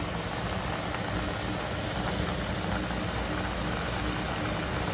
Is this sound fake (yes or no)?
no